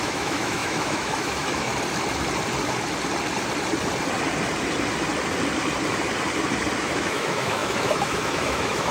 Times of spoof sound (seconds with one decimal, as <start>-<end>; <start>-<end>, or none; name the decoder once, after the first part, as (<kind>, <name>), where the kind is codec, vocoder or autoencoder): 0.0-1.7 (autoencoder, DAC-VAE); 6.8-8.9